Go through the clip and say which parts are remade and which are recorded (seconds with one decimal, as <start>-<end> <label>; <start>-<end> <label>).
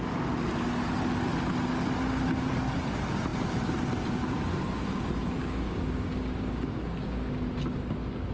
0.0-5.4 recorded; 5.4-7.3 remade; 7.3-8.3 recorded